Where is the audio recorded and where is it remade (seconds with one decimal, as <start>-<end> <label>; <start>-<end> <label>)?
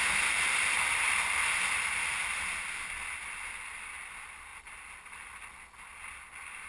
0.0-6.7 recorded